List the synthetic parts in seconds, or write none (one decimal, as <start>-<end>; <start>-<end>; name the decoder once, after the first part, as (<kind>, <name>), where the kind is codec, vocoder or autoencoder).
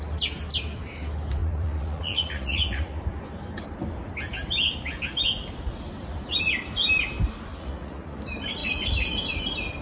1.4-3.0 (vocoder, Vocos); 7.5-8.2